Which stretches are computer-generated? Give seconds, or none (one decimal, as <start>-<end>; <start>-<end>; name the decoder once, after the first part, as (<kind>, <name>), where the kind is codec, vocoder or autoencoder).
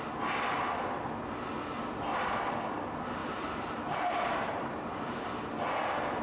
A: 3.2-5.4 (vocoder, BigVGAN v2)